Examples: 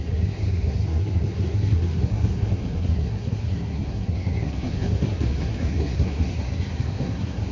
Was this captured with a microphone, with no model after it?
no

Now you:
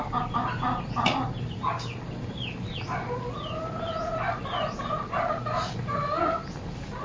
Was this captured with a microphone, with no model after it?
yes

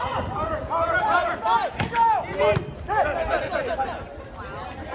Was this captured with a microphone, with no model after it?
yes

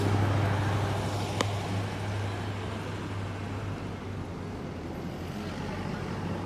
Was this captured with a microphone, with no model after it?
yes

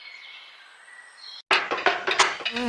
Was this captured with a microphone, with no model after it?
yes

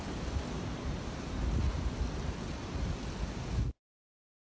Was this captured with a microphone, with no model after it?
yes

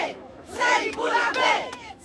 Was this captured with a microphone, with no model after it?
no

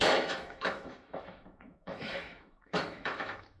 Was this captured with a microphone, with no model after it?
no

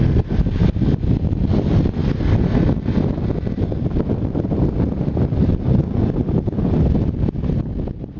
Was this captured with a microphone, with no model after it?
yes